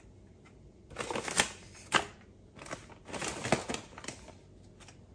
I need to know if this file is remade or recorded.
recorded